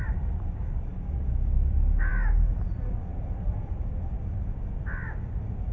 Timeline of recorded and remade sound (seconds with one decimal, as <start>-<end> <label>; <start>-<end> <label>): 0.0-0.9 recorded; 0.9-1.5 remade; 1.5-5.7 recorded